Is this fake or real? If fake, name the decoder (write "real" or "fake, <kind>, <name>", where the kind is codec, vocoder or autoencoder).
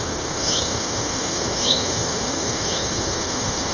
fake, autoencoder, DAC-VAE